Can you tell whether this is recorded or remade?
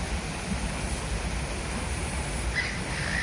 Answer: recorded